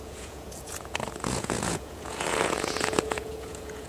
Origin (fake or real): fake